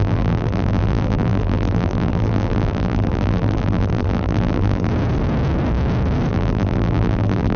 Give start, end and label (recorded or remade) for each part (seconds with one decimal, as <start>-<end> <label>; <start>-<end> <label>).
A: 0.0-4.9 remade; 4.9-6.3 recorded; 6.3-7.6 remade